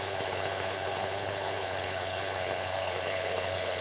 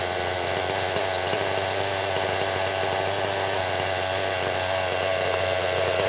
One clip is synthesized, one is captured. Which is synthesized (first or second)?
first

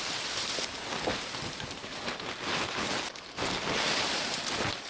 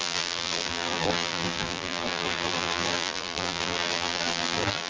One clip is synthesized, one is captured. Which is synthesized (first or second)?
second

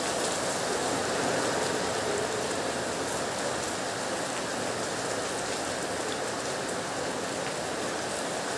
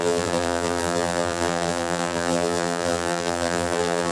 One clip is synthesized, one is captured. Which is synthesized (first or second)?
second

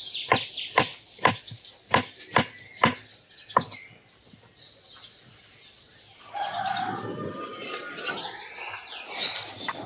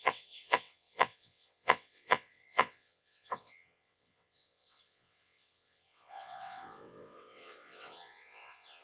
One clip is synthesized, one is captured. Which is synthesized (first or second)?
second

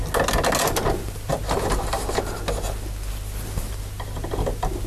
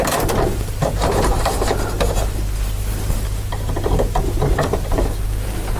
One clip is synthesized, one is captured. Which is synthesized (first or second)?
second